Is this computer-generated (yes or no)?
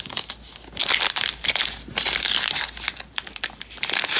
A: no